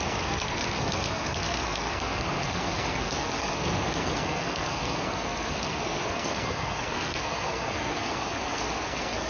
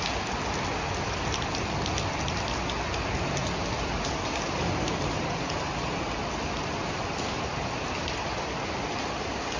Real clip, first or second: second